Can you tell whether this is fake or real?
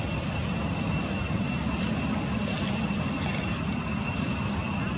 real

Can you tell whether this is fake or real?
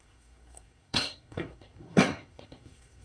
fake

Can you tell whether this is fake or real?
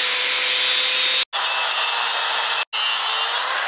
real